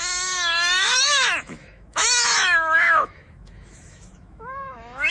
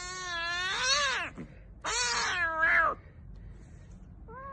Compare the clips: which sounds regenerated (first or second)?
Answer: first